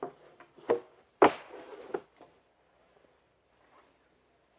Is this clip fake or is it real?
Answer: real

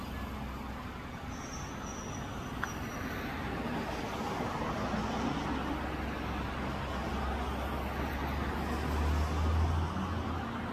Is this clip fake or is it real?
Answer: real